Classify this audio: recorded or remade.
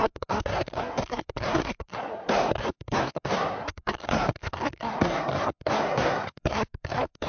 remade